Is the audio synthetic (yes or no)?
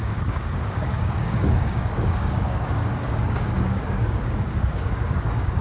yes